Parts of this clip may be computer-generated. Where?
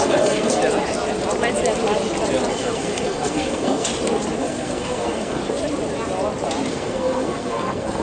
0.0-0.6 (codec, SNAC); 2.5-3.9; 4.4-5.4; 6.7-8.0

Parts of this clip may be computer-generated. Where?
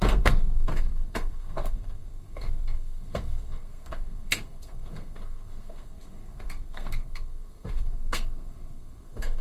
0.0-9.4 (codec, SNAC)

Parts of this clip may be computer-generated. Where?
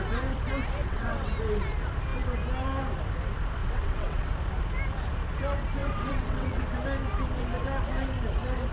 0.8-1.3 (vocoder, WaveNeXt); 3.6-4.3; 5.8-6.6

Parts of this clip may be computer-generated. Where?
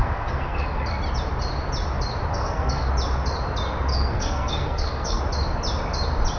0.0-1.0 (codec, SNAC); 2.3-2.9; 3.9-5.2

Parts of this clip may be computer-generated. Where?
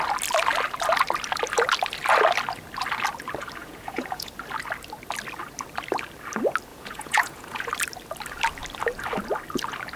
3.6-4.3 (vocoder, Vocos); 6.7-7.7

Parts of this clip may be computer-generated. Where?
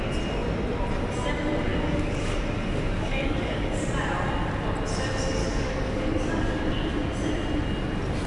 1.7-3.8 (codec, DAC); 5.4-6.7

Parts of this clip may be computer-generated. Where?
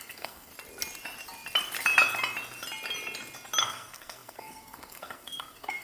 0.0-0.5 (codec, SNAC); 3.6-5.8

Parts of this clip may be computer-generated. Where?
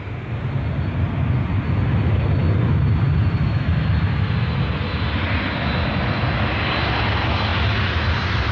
none